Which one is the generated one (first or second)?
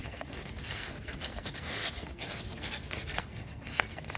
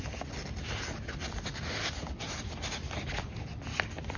first